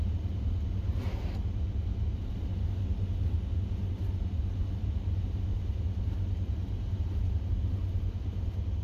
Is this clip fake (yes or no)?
no